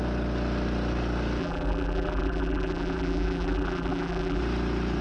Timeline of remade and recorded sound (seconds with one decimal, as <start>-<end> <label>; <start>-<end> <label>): 0.0-1.4 recorded; 1.4-4.4 remade; 4.4-5.0 recorded